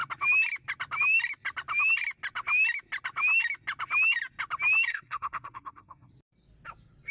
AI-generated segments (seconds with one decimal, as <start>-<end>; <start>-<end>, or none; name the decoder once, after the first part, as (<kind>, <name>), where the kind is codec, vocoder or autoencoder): 4.9-6.1 (codec, SNAC)